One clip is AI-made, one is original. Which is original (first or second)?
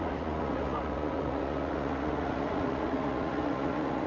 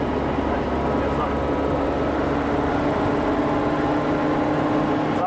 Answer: second